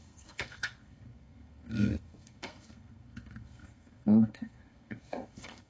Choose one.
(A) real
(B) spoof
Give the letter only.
B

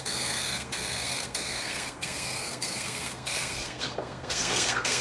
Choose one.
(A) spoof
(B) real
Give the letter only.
A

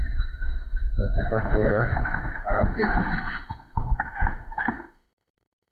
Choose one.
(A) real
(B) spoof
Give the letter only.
B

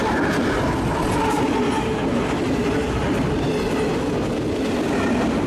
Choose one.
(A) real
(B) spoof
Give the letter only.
A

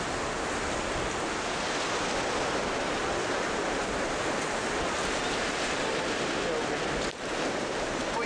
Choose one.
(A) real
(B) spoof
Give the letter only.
A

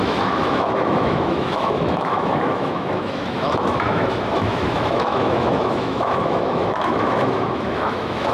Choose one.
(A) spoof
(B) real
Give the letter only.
A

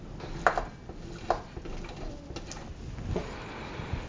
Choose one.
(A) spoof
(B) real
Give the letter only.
B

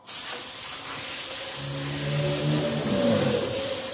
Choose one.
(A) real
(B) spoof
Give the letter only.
A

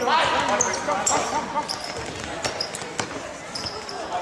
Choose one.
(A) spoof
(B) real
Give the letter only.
B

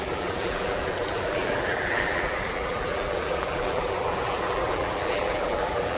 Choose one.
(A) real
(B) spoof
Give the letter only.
B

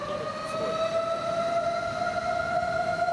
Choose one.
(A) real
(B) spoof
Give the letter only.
A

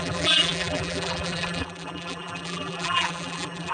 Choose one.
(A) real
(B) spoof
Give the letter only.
B